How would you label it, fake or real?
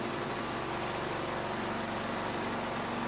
real